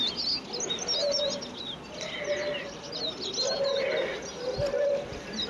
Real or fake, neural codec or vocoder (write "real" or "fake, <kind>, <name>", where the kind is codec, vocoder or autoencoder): real